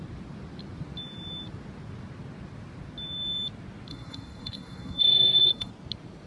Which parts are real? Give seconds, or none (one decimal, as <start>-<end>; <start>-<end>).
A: 0.0-3.9; 5.7-6.3